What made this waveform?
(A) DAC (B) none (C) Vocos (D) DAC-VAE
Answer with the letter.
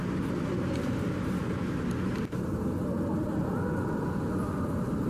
B